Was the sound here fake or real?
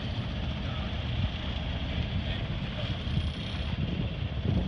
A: real